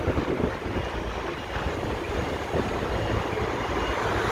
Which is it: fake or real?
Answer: real